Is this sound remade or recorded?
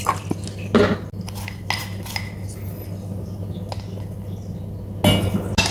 recorded